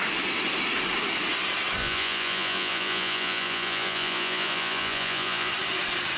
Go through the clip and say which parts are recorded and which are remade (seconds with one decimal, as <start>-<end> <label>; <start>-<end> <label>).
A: 0.0-1.8 recorded; 1.8-5.5 remade; 5.5-6.2 recorded